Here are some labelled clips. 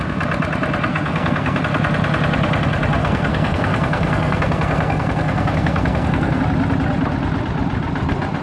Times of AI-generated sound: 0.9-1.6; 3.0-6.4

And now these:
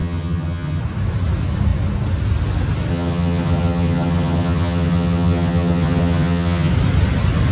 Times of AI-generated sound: 0.0-0.8; 2.9-6.7

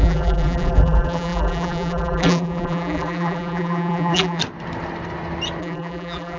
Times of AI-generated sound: 0.0-4.4; 5.6-6.4

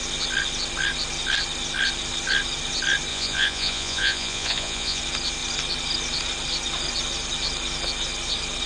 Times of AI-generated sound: 3.1-5.0

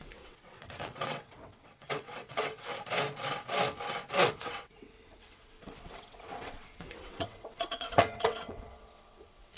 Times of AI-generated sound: 0.0-2.7; 4.3-9.6